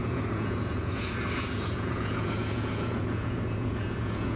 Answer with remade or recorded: remade